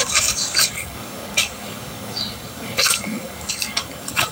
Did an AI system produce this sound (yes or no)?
yes